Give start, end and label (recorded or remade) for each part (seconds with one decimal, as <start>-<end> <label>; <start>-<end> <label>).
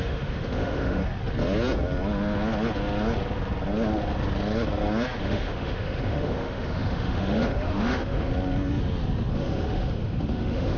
0.0-1.0 remade; 1.0-5.2 recorded; 5.2-8.3 remade; 8.3-9.3 recorded; 9.3-10.8 remade